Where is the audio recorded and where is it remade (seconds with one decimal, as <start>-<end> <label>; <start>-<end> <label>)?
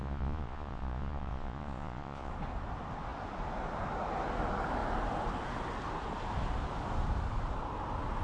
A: 0.0-2.3 remade; 2.3-8.2 recorded